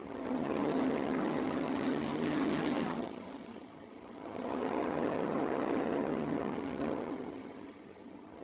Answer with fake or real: fake